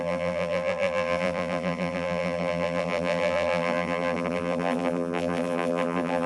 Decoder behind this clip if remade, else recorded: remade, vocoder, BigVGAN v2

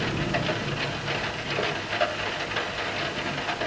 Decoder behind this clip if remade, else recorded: recorded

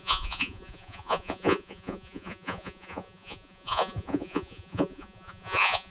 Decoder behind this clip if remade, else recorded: remade, vocoder, Vocos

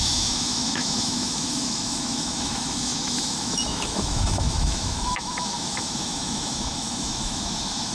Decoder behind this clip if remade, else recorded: remade, autoencoder, DAC-VAE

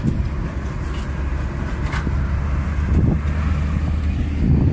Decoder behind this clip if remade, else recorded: recorded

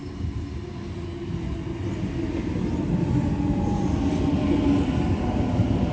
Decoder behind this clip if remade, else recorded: recorded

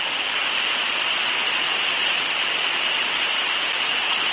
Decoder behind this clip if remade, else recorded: recorded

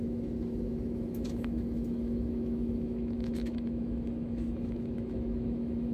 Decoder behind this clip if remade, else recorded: remade, autoencoder, DAC-VAE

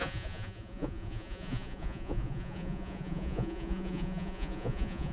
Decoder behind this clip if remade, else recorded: remade, vocoder, Vocos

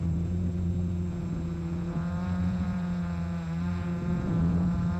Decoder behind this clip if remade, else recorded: remade, vocoder, Vocos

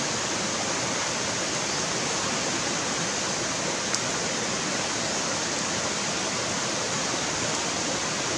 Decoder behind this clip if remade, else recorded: recorded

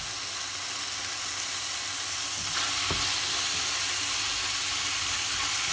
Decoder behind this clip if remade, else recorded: recorded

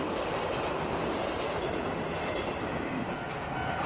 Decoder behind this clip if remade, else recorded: recorded